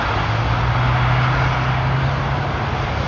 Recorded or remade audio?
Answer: recorded